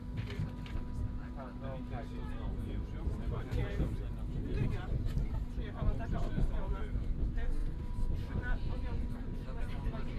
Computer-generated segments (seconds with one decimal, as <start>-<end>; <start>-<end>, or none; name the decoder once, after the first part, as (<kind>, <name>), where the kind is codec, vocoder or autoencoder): 7.6-9.6 (vocoder, BigVGAN v2)